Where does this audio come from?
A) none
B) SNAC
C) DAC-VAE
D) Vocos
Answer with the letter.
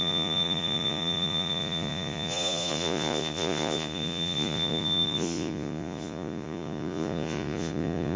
D